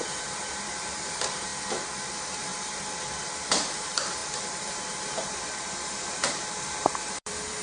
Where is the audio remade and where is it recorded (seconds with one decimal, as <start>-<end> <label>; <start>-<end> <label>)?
0.0-1.5 remade; 1.5-2.1 recorded; 2.1-2.5 remade; 2.5-3.0 recorded; 3.0-7.6 remade